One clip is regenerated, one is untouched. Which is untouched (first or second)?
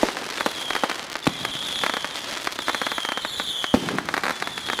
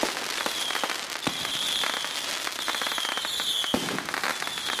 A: second